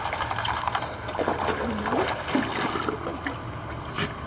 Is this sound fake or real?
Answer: real